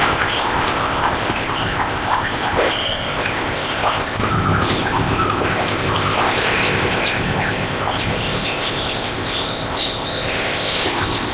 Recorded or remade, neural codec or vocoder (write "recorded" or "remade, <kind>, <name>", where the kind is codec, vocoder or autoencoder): remade, codec, ZipCodec